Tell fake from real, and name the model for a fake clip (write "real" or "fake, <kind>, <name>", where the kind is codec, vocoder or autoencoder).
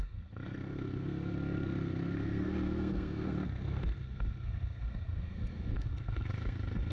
fake, codec, SNAC